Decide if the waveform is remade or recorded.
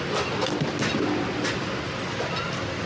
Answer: recorded